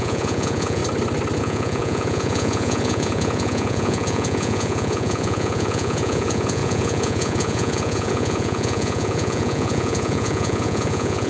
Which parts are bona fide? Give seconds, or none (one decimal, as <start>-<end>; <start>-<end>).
0.8-1.4